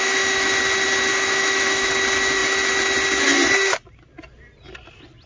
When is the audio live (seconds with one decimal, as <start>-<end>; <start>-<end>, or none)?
0.6-1.1; 1.9-5.3